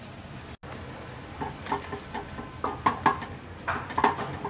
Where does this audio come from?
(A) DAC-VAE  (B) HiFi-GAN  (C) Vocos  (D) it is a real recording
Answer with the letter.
D